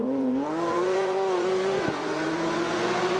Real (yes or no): no